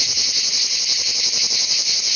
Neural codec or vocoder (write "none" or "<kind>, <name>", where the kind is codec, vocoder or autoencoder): none